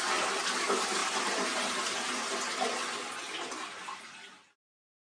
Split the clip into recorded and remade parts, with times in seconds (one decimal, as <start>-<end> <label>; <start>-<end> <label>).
0.0-5.0 recorded